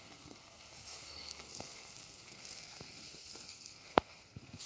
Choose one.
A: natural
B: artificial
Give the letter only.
B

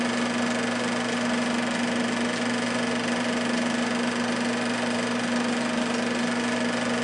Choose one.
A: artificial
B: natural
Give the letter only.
B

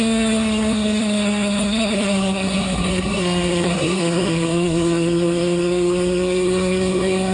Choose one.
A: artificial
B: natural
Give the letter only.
A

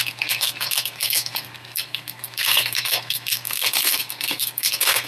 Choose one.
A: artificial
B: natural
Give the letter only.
A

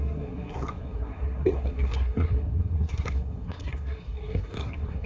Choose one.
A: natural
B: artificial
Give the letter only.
B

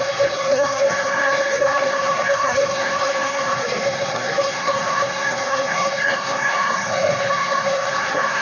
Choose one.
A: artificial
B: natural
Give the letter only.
A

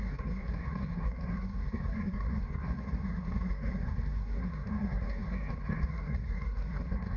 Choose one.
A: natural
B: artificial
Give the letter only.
B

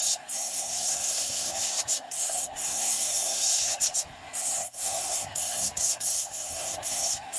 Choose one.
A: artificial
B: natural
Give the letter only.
A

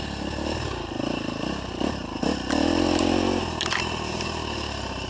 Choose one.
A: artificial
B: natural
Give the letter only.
B